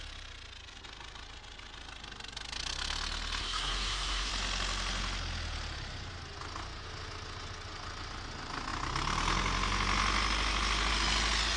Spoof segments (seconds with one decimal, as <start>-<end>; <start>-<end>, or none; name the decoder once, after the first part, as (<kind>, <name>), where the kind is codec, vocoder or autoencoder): 3.4-4.3 (codec, SNAC)